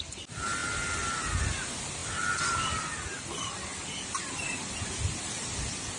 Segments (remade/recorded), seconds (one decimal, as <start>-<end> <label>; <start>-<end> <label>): 0.0-6.0 recorded

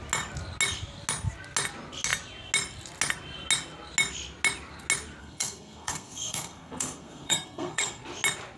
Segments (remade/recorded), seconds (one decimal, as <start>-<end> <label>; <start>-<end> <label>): 0.0-5.2 recorded; 5.2-8.0 remade; 8.0-8.6 recorded

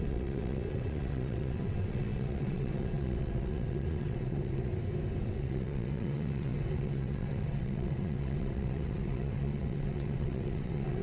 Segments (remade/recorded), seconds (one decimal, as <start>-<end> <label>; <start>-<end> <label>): 0.0-4.7 remade; 4.7-5.2 recorded; 5.2-11.0 remade

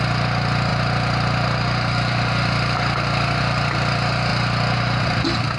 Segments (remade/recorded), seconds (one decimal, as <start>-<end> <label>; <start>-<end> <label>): 0.0-5.6 recorded

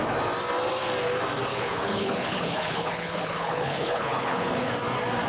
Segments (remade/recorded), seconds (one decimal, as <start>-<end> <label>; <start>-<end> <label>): 0.0-1.5 recorded; 1.5-4.7 remade; 4.7-5.3 recorded